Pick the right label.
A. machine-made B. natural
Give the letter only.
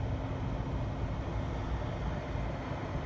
B